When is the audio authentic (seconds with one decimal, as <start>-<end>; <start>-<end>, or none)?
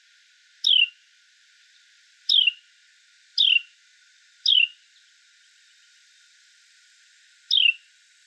0.0-8.3